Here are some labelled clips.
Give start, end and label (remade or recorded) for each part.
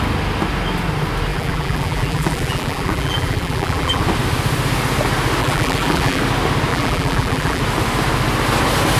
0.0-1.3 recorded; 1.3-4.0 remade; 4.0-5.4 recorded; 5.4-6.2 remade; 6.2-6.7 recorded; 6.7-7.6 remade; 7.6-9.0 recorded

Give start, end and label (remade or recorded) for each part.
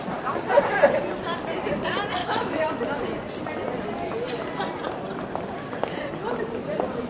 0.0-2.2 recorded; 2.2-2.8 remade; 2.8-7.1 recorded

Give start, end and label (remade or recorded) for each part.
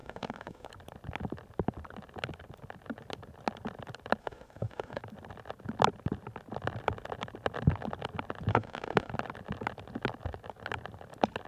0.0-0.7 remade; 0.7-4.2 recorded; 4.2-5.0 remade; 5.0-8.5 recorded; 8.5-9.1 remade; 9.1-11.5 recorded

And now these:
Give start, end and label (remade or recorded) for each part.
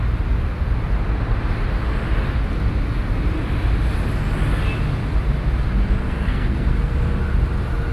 0.0-6.0 recorded; 6.0-6.9 remade; 6.9-7.9 recorded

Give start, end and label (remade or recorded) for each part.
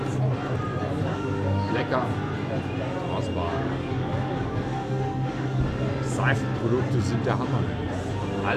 0.0-0.7 recorded; 0.7-1.8 remade; 1.8-3.4 recorded; 3.4-5.6 remade; 5.6-8.6 recorded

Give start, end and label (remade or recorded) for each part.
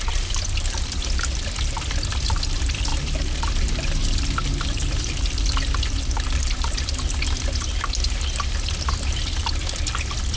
0.0-2.9 remade; 2.9-5.2 recorded; 5.2-6.9 remade; 6.9-8.3 recorded; 8.3-10.4 remade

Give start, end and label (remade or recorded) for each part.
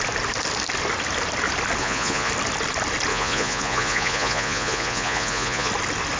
0.0-1.8 recorded; 1.8-2.3 remade; 2.3-3.1 recorded; 3.1-5.7 remade; 5.7-6.2 recorded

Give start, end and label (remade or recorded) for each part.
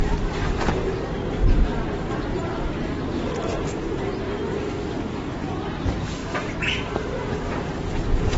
0.0-0.8 recorded; 0.8-1.7 remade; 1.7-5.4 recorded; 5.4-6.2 remade; 6.2-7.5 recorded; 7.5-8.4 remade